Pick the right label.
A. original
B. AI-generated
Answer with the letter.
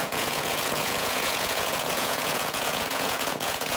B